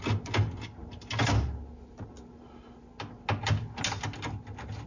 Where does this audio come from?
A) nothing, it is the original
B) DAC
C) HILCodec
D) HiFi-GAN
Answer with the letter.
A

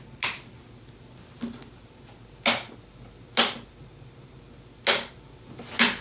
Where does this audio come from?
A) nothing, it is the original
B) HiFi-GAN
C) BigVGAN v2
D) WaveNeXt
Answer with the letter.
A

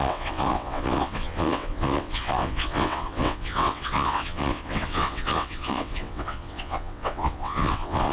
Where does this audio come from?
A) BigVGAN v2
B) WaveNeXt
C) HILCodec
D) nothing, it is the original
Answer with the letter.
B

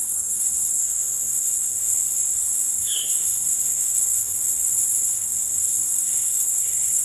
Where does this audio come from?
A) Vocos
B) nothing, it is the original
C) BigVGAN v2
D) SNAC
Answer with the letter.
D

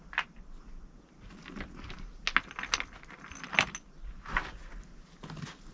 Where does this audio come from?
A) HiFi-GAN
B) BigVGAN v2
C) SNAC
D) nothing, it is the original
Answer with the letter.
D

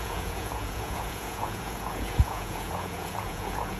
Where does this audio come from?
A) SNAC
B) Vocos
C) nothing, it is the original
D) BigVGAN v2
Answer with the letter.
B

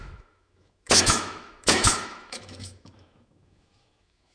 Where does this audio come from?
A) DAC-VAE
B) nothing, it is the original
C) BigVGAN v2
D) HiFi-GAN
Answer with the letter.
A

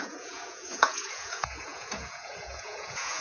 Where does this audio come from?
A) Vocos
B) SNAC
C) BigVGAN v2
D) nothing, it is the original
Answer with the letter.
A